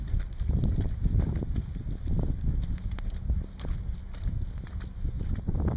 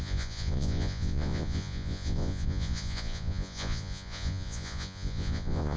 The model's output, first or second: second